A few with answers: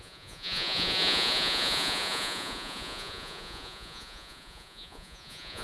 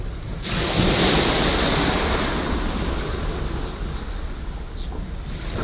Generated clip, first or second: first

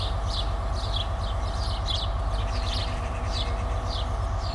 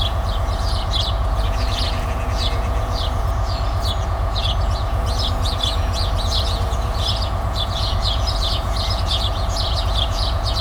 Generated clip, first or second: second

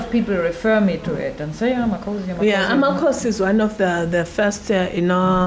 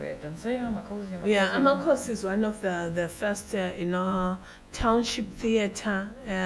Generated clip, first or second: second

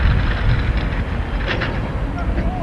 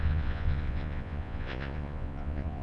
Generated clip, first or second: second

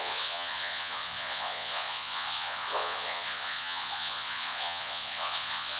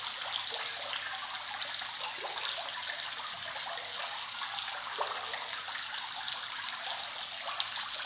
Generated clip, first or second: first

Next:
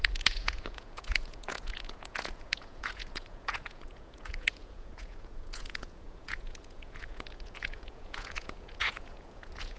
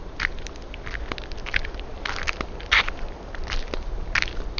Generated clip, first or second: first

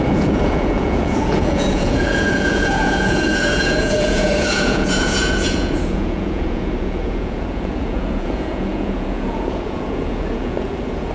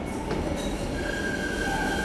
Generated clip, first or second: first